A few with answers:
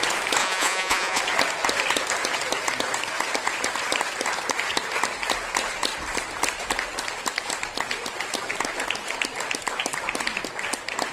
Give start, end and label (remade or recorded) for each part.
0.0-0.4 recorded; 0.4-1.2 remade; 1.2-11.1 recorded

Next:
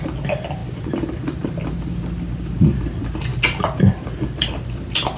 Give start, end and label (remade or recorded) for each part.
0.0-5.2 recorded

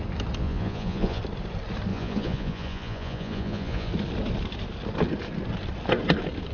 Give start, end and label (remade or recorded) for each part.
0.0-0.4 recorded; 0.4-1.2 remade; 1.2-1.9 recorded; 1.9-3.9 remade; 3.9-6.5 recorded

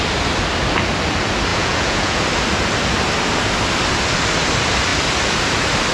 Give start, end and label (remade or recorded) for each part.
0.0-1.5 recorded; 1.5-2.2 remade; 2.2-5.9 recorded

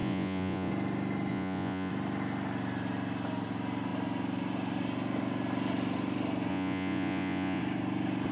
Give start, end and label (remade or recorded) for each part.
0.0-0.7 remade; 0.7-1.3 recorded; 1.3-1.9 remade; 1.9-6.5 recorded; 6.5-7.6 remade; 7.6-8.3 recorded